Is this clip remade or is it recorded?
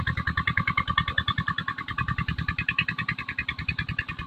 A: recorded